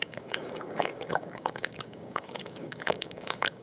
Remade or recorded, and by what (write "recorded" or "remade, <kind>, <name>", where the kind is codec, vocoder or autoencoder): remade, codec, DAC